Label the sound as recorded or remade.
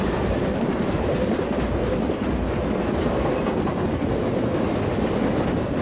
recorded